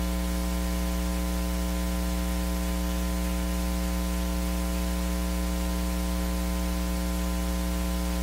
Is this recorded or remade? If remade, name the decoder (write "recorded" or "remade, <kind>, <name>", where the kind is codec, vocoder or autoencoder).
recorded